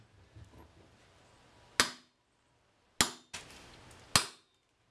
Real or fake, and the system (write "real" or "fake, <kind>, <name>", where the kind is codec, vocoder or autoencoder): real